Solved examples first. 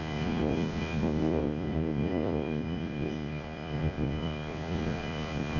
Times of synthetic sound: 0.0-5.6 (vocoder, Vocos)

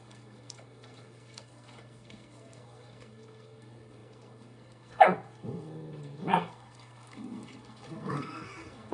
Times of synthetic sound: 0.0-8.9 (codec, SNAC)

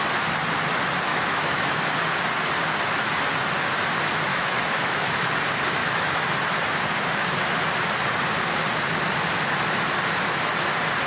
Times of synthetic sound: 1.1-1.8 (autoencoder, DAC-VAE); 4.3-5.3; 5.8-6.3

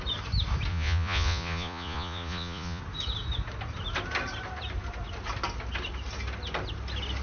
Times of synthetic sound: 0.7-2.8 (vocoder, Vocos)